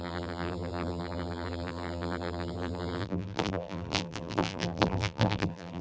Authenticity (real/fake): fake